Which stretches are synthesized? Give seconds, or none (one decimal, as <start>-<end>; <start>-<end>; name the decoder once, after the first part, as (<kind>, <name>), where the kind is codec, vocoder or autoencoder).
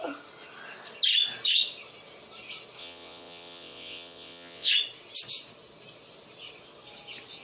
2.8-4.7 (vocoder, WaveNeXt)